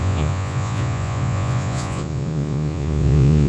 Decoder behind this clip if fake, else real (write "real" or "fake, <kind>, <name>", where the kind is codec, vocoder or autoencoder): fake, vocoder, Vocos